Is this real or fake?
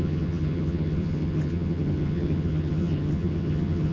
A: fake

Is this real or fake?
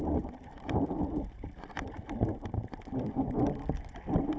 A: real